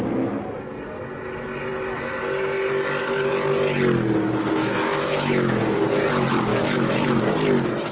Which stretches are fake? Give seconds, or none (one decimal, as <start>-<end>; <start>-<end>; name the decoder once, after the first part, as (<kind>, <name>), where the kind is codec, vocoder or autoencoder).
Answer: 4.6-5.6 (autoencoder, DAC-VAE); 6.5-7.2